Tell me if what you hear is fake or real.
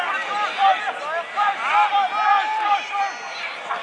real